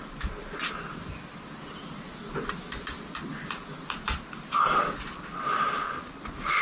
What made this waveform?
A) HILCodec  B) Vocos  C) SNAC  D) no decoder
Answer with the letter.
D